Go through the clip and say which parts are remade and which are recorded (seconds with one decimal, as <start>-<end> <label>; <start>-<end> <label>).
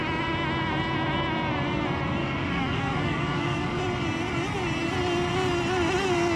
0.0-2.2 recorded; 2.2-3.8 remade; 3.8-6.4 recorded